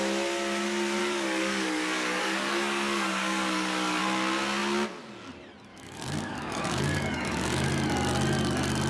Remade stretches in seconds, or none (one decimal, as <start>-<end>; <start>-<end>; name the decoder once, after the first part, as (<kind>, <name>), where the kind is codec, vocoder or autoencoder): 1.0-4.0 (codec, DAC); 5.7-7.7

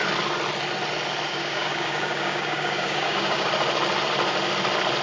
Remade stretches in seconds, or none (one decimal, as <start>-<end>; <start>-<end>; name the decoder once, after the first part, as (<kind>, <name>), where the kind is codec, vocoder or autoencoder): 1.3-3.5 (codec, DAC)